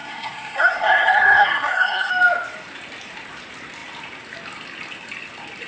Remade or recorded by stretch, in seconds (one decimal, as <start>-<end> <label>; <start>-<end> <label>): 0.0-2.1 remade; 2.1-5.7 recorded